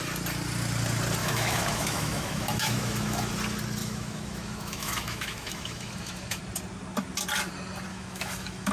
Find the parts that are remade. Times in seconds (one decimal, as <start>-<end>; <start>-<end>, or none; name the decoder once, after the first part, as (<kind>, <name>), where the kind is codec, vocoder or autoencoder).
1.2-3.3 (autoencoder, DAC-VAE); 3.8-6.4; 7.9-8.7